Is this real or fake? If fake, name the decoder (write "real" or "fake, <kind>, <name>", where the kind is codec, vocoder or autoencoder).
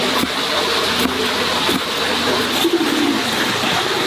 real